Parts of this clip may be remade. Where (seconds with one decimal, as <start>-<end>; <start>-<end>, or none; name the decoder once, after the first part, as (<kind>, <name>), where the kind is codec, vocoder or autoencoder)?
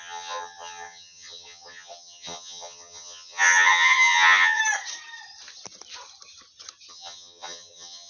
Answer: 0.0-4.6 (vocoder, HiFi-GAN); 6.9-8.1